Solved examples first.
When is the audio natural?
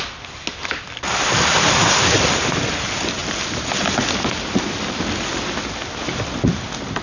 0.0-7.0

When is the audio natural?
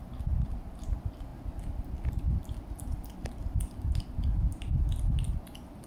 0.0-5.9